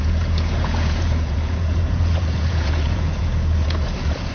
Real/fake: fake